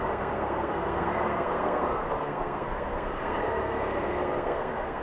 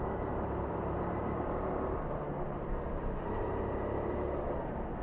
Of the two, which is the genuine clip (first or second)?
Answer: second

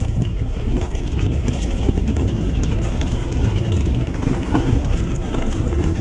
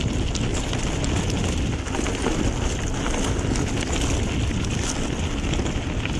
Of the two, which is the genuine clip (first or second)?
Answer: second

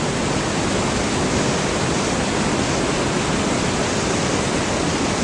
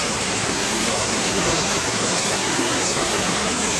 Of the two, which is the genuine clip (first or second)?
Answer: first